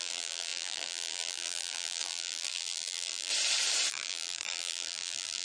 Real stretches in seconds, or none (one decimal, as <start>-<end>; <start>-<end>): 3.3-3.9

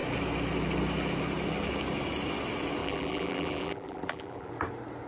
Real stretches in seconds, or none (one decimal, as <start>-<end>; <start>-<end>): 0.0-2.8; 4.5-5.1